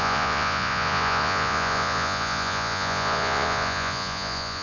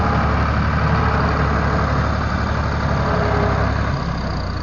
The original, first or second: second